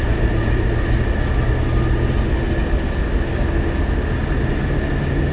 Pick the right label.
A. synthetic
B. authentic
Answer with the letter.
B